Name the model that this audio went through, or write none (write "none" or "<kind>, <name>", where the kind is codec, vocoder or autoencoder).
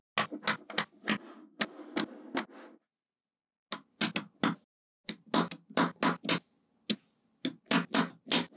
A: none